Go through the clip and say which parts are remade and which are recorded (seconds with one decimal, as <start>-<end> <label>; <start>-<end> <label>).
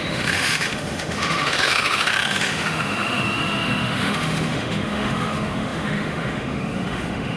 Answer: 0.0-7.4 remade